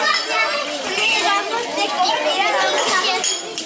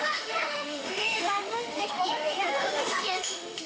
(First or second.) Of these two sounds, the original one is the first